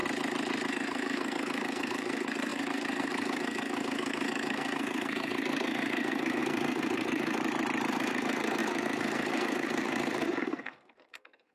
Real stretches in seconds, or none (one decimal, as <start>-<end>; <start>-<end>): 0.0-0.7; 7.4-7.9